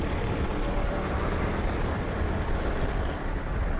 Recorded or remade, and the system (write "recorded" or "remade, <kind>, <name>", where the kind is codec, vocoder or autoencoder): remade, vocoder, BigVGAN v2